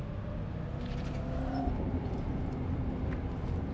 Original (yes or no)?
yes